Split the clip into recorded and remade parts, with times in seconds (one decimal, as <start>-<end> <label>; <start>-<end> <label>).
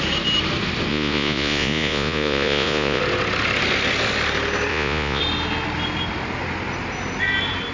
0.0-0.9 recorded; 0.9-3.0 remade; 3.0-4.7 recorded; 4.7-5.2 remade; 5.2-7.7 recorded